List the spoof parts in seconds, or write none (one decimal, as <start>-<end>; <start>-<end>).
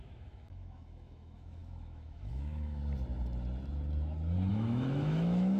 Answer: 0.0-2.8; 4.5-5.6